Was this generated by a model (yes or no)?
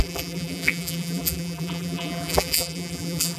yes